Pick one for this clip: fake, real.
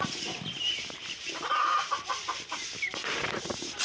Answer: fake